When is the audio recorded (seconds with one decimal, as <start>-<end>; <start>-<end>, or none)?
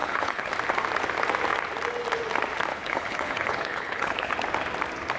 0.5-2.7; 4.3-5.2